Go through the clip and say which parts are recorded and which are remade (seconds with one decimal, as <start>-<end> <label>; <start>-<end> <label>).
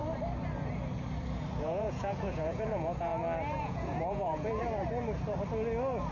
0.0-1.6 recorded; 1.6-3.1 remade; 3.1-3.6 recorded; 3.6-4.6 remade; 4.6-6.1 recorded